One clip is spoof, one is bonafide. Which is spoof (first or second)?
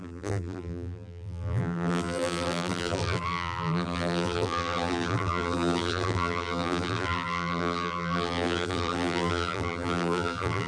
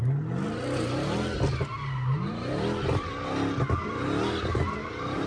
first